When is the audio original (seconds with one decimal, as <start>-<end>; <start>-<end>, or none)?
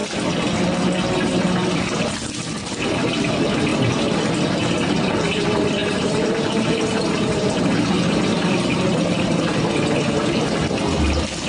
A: 0.0-5.8; 7.6-8.3; 9.4-11.5